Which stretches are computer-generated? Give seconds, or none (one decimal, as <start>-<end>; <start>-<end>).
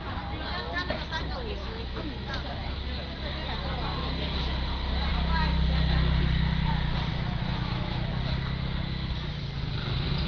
1.6-2.3; 7.1-8.1